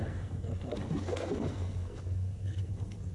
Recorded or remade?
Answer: remade